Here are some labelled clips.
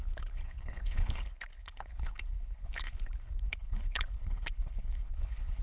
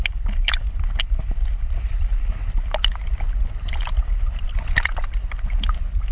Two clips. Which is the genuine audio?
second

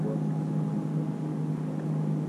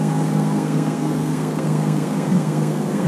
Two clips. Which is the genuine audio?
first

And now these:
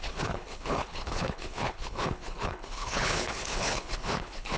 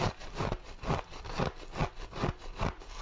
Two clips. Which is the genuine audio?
second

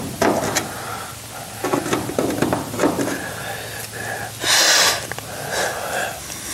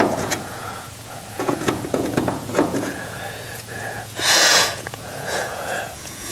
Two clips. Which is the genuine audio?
first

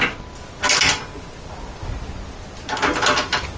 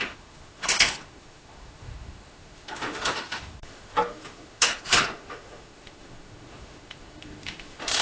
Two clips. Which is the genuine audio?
first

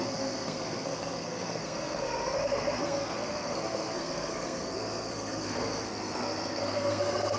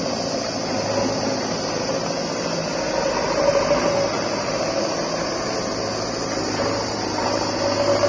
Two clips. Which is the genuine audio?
second